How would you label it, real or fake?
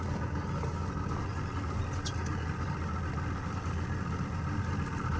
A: real